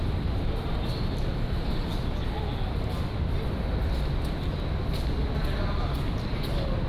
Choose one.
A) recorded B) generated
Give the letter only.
A